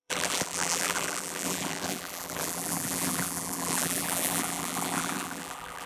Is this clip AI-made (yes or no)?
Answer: yes